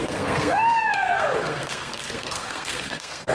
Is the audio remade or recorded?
remade